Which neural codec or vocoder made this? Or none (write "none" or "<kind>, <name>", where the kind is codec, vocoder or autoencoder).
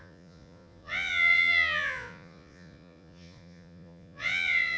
vocoder, Vocos